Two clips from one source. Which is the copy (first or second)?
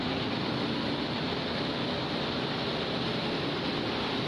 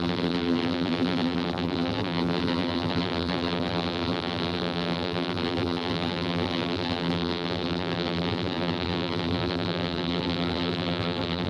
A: second